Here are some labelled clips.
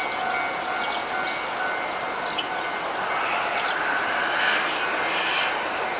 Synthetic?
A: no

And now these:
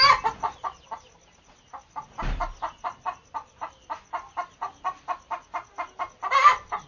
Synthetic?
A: no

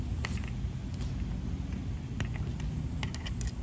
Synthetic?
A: no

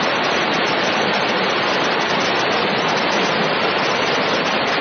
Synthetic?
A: no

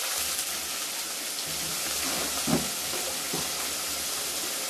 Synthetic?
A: no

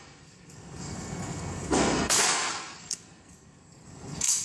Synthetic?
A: yes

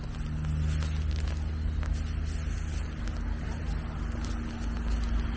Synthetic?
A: no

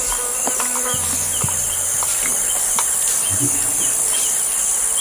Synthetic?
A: no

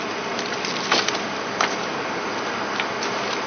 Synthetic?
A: no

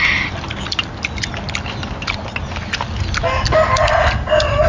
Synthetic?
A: no